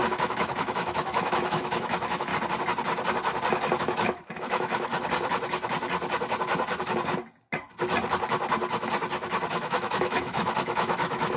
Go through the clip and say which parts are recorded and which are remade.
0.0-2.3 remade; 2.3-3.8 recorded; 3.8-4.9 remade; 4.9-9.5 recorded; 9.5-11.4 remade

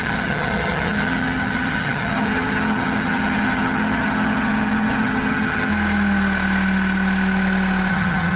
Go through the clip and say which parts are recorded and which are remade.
0.0-5.7 remade; 5.7-7.9 recorded; 7.9-8.4 remade

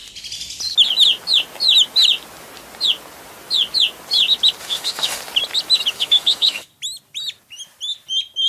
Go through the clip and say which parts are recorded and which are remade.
0.0-4.6 recorded; 4.6-5.2 remade; 5.2-5.9 recorded; 5.9-6.7 remade; 6.7-8.5 recorded

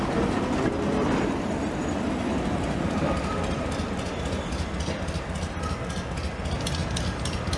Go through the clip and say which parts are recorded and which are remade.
0.0-7.6 recorded

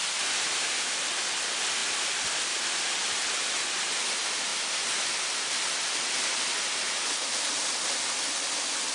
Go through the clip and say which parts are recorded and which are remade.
0.0-8.9 recorded